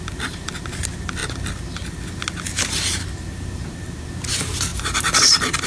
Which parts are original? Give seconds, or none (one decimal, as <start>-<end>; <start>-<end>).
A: 0.0-5.7